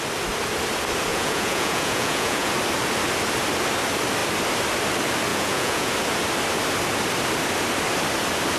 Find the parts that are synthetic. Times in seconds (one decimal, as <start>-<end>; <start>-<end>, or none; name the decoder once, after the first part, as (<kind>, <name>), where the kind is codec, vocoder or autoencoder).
1.1-2.5 (vocoder, Vocos); 5.3-5.9